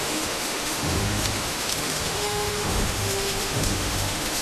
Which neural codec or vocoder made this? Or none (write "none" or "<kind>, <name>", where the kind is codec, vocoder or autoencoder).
autoencoder, DAC-VAE